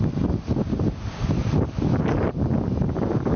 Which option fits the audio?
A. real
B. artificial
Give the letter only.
A